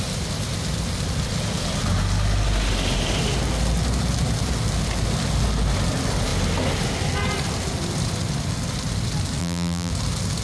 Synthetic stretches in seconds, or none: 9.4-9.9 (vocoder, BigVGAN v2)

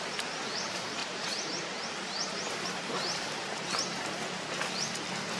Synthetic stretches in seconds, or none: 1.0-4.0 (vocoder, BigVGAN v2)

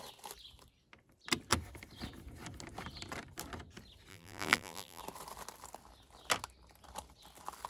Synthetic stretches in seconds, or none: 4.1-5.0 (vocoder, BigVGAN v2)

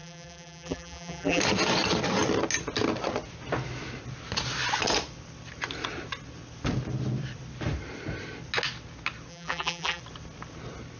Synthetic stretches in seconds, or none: 0.0-1.4 (vocoder, BigVGAN v2); 9.3-10.0

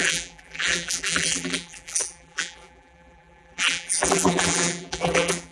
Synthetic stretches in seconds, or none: 0.0-5.5 (vocoder, BigVGAN v2)

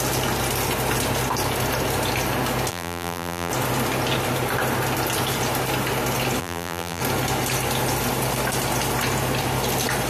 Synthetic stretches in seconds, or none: 2.7-3.5 (vocoder, BigVGAN v2); 6.4-7.0

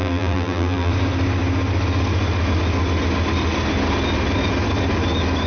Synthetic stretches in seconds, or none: 0.0-0.9 (vocoder, BigVGAN v2)

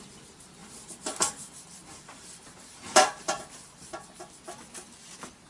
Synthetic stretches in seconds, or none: 0.6-3.9 (vocoder, BigVGAN v2)